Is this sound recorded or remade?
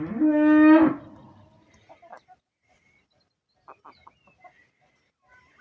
recorded